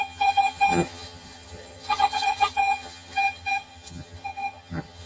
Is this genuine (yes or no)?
no